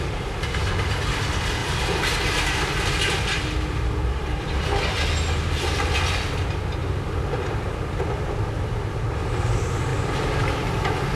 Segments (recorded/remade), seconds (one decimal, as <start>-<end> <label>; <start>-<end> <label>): 0.0-1.6 recorded; 1.6-4.7 remade; 4.7-6.8 recorded; 6.8-9.0 remade; 9.0-9.9 recorded; 9.9-11.1 remade